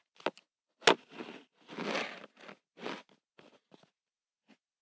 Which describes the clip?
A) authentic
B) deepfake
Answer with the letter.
A